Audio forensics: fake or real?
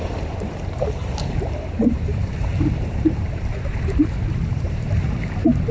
fake